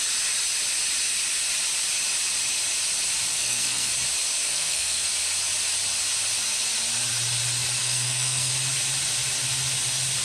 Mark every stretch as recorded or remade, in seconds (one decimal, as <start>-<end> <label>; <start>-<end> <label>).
0.0-3.3 recorded; 3.3-3.9 remade; 3.9-4.5 recorded; 4.5-5.1 remade; 5.1-7.8 recorded; 7.8-8.5 remade; 8.5-10.2 recorded